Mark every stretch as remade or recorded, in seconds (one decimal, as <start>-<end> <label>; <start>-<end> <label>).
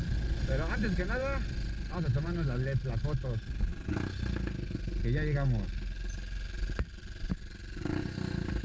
0.0-8.6 recorded